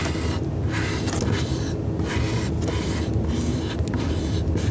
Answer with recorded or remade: recorded